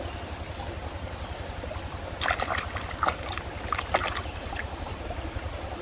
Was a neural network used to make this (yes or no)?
no